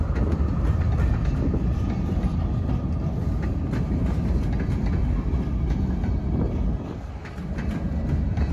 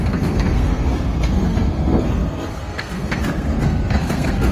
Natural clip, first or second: first